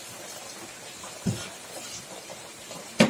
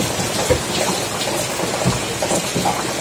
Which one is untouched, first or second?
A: second